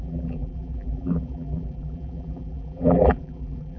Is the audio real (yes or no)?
no